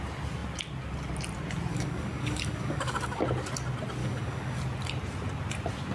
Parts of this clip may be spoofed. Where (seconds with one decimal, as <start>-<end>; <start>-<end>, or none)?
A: 1.7-3.2; 4.0-4.6